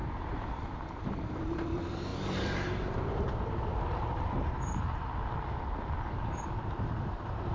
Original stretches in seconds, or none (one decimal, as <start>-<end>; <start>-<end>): 5.0-6.6